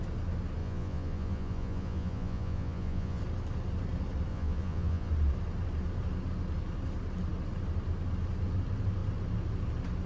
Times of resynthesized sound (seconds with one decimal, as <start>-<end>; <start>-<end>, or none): 0.6-3.2; 4.3-5.1